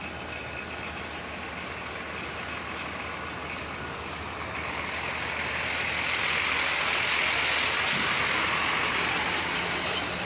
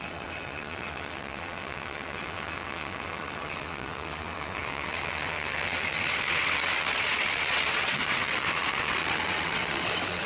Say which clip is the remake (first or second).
second